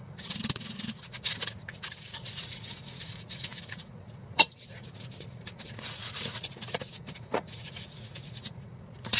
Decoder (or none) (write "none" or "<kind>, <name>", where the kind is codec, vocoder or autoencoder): vocoder, Vocos